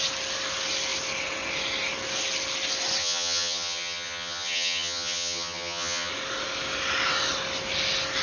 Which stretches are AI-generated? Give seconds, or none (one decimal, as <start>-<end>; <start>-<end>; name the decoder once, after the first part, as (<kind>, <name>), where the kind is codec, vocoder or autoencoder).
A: 3.0-6.1 (vocoder, HiFi-GAN)